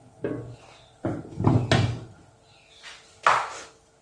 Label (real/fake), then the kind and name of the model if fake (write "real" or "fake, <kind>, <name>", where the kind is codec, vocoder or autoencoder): real